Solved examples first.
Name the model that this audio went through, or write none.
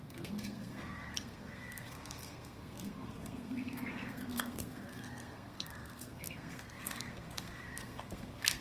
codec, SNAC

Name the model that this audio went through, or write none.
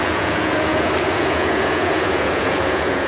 vocoder, Vocos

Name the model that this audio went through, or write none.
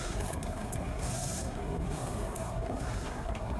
codec, SNAC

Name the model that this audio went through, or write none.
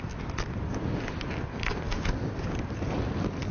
none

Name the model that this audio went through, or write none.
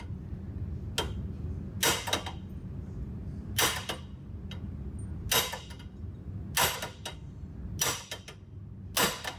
none